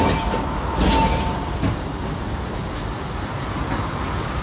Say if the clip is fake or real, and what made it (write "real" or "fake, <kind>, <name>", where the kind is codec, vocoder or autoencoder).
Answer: real